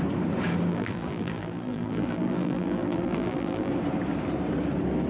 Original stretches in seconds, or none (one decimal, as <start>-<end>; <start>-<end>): 0.0-0.7; 3.7-5.1